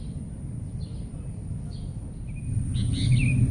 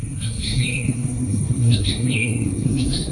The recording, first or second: first